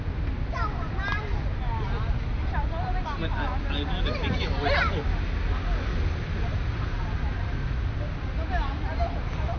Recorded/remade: recorded